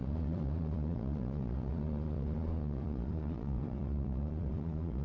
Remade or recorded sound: remade